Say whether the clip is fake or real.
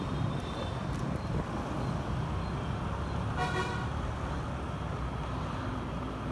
real